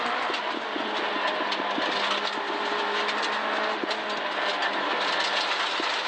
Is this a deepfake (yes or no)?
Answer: no